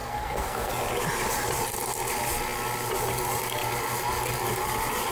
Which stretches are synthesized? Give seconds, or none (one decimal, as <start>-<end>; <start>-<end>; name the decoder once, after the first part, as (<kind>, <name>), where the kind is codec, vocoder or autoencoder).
0.0-0.7 (codec, SNAC)